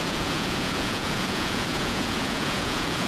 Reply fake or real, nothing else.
fake